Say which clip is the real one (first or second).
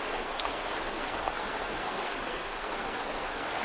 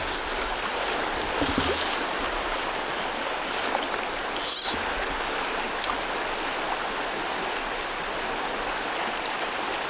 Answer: second